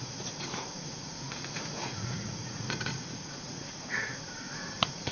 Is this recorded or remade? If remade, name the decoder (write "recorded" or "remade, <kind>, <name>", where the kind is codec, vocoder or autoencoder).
remade, vocoder, Vocos